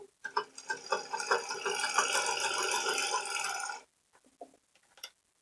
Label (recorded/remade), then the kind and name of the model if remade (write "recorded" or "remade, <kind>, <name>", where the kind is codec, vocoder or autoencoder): recorded